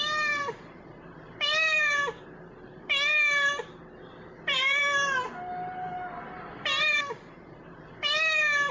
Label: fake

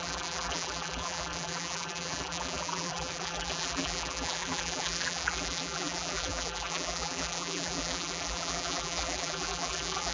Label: fake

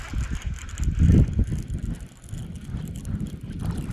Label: real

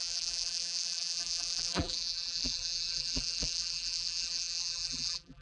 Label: fake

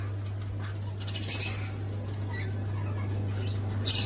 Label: real